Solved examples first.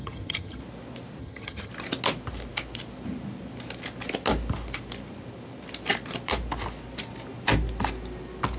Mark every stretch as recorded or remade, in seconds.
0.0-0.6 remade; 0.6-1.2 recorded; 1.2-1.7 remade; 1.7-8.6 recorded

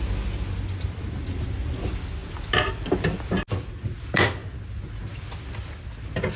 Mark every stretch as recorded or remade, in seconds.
0.0-6.4 recorded

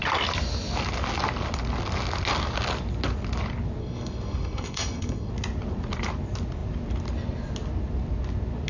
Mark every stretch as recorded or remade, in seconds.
0.0-3.8 recorded; 3.8-5.3 remade; 5.3-8.7 recorded